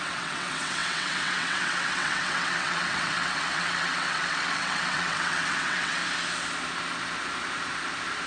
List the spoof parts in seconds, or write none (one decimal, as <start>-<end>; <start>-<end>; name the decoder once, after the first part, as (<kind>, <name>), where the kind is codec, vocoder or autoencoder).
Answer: 0.0-6.0 (vocoder, WaveNeXt)